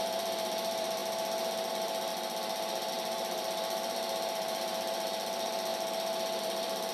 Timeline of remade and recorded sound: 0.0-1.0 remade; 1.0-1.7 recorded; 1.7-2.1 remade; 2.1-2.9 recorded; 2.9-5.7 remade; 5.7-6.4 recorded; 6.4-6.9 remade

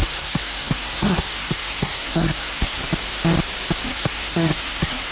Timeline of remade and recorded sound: 0.0-2.9 remade; 2.9-3.9 recorded; 3.9-5.1 remade

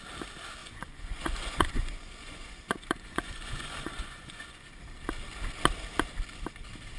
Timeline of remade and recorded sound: 0.0-0.6 recorded; 0.6-4.8 remade; 4.8-7.0 recorded

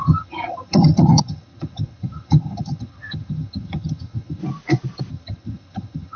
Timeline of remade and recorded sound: 0.0-4.4 remade; 4.4-5.1 recorded; 5.1-6.2 remade

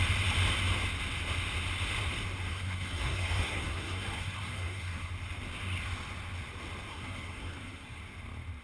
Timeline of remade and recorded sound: 0.0-2.5 recorded; 2.5-5.1 remade; 5.1-6.9 recorded; 6.9-8.0 remade; 8.0-8.6 recorded

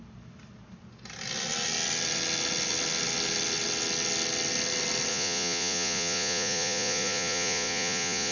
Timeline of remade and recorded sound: 0.0-5.1 recorded; 5.1-8.3 remade